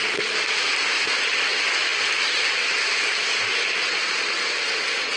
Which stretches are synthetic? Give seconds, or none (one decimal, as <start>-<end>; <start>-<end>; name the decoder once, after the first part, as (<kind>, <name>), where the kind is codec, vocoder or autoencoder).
none